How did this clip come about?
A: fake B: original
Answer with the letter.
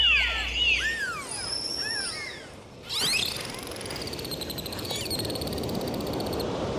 B